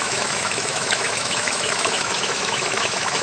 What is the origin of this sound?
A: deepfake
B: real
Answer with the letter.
A